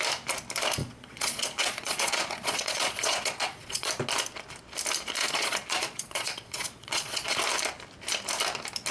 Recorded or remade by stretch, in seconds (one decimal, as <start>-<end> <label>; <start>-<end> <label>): 0.0-0.8 recorded; 0.8-3.9 remade; 3.9-5.2 recorded; 5.2-7.4 remade; 7.4-8.9 recorded